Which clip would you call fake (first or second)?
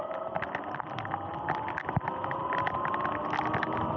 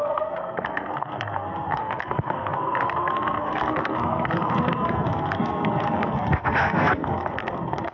second